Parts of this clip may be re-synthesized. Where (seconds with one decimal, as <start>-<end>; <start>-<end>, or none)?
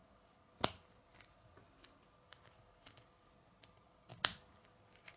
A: none